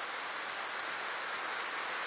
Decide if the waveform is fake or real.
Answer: real